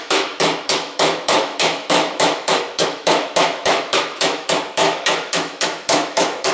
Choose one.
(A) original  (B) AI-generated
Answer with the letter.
B